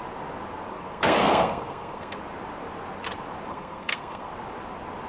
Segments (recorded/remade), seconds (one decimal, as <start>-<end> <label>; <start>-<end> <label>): 0.0-0.7 recorded; 0.7-2.2 remade; 2.2-3.5 recorded; 3.5-4.3 remade; 4.3-5.1 recorded